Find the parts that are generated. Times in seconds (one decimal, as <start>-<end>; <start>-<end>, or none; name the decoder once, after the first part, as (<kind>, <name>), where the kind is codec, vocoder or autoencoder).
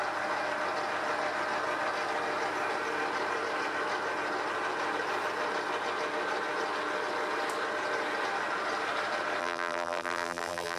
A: 9.4-10.8 (vocoder, BigVGAN v2)